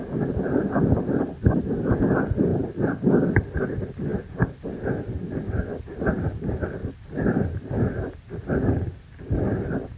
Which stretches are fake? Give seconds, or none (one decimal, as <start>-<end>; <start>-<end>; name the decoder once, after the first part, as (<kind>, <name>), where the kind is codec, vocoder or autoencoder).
none